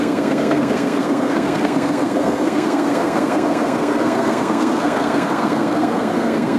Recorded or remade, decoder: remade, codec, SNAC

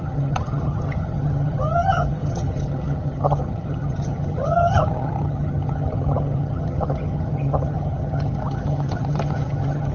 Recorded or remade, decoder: remade, vocoder, HiFi-GAN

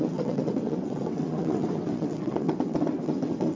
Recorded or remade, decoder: remade, vocoder, WaveNeXt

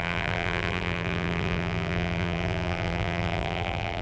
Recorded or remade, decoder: remade, vocoder, BigVGAN v2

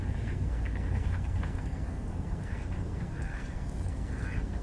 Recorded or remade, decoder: remade, codec, SNAC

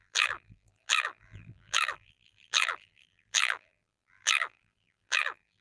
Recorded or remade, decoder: remade, vocoder, BigVGAN v2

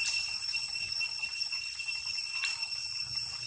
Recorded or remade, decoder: recorded